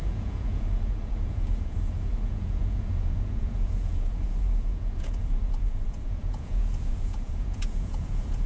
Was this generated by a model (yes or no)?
yes